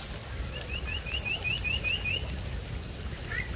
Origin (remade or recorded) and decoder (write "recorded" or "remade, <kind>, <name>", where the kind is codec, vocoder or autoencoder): recorded